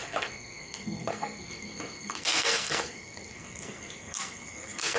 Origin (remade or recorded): remade